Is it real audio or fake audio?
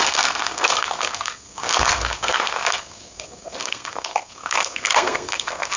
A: fake